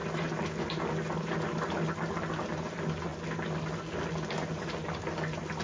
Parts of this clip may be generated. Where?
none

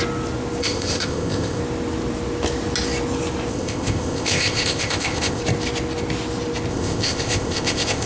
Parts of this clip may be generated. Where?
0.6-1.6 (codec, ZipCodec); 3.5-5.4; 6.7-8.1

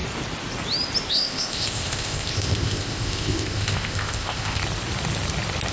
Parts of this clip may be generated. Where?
1.1-4.6 (codec, ZipCodec)

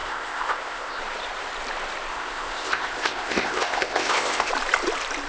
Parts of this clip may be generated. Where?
0.0-1.0 (codec, ZipCodec); 2.1-4.5

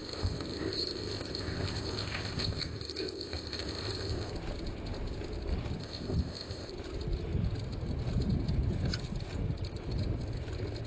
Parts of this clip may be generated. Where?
0.0-4.3 (codec, ZipCodec); 5.8-6.7